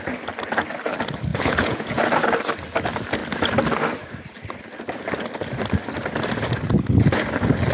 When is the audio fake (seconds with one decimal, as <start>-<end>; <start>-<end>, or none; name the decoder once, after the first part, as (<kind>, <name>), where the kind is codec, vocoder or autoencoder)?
1.3-2.0 (vocoder, Vocos)

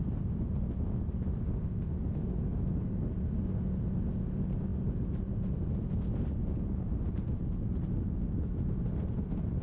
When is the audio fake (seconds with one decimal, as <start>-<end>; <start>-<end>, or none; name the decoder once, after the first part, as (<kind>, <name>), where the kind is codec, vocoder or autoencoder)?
none